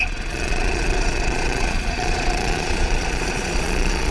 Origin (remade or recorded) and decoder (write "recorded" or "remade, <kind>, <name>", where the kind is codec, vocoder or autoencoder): remade, vocoder, Vocos